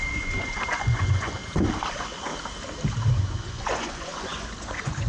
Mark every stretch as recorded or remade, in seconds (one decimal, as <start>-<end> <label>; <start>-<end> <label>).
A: 0.0-1.4 remade; 1.4-1.9 recorded; 1.9-2.3 remade; 2.3-3.1 recorded; 3.1-5.1 remade